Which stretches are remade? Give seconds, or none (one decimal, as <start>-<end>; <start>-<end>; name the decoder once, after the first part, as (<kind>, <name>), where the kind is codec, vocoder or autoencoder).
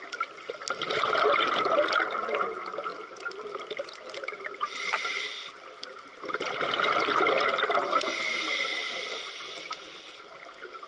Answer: 2.9-4.1 (vocoder, BigVGAN v2); 4.6-6.5; 8.8-9.4